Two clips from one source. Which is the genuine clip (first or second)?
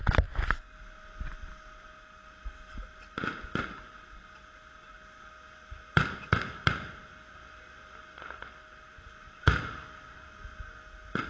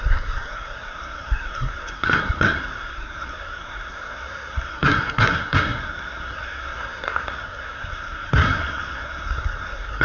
first